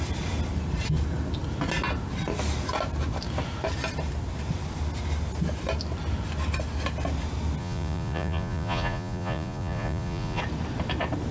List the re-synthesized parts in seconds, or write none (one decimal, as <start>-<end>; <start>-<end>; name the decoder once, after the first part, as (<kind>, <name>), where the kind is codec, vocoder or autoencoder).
7.6-10.4 (vocoder, Vocos)